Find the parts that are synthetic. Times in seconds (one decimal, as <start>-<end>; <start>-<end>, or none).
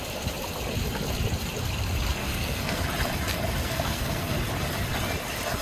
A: 2.2-2.8; 3.6-4.4